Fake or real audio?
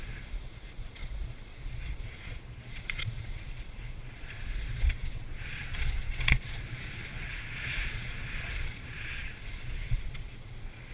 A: fake